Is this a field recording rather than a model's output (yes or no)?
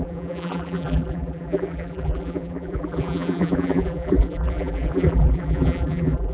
no